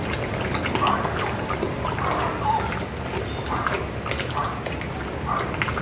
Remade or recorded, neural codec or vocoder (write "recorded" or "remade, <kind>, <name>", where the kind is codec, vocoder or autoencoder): recorded